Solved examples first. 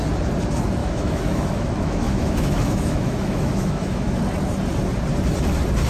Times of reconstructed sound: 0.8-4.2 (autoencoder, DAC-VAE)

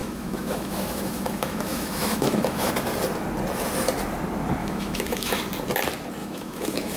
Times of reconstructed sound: 0.0-2.7 (autoencoder, DAC-VAE); 4.6-5.4; 6.2-7.0